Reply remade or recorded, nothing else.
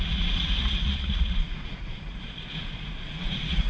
remade